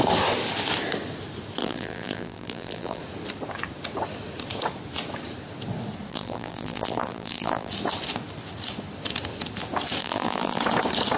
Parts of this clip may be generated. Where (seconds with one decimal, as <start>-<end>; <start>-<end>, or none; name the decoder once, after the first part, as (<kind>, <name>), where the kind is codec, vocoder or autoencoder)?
1.6-3.0 (vocoder, BigVGAN v2); 6.1-7.7; 10.0-10.6